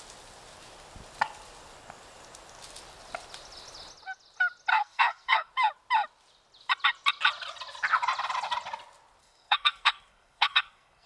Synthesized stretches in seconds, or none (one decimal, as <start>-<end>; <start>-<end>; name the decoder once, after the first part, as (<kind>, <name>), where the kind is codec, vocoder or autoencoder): 4.7-5.5 (codec, SNAC); 9.2-11.1